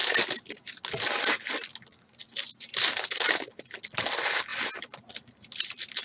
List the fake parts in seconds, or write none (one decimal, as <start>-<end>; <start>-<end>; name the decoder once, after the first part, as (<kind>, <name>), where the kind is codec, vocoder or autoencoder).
none